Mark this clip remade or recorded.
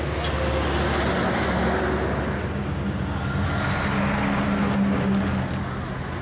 recorded